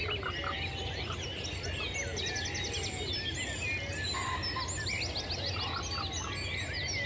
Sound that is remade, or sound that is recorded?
recorded